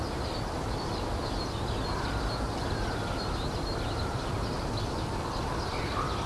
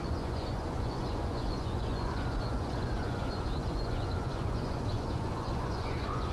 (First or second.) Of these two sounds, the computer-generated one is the second